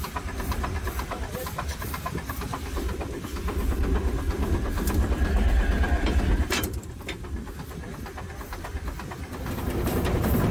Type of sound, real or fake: fake